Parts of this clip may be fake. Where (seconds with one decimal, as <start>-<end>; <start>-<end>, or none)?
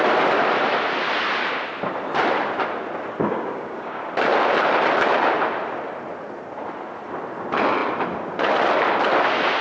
3.2-4.0